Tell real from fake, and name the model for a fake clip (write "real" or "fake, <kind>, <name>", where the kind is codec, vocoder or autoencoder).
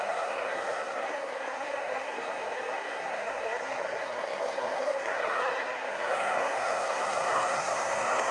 fake, codec, SNAC